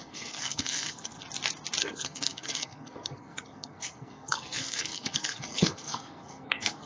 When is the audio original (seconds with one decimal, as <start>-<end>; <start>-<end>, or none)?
1.2-1.8